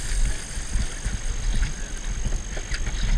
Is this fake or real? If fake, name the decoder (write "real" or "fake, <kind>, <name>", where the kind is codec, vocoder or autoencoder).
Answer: real